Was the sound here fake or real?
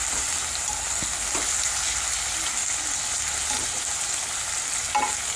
real